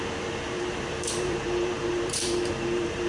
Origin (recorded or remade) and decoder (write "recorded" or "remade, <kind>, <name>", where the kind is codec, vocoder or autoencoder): remade, vocoder, BigVGAN v2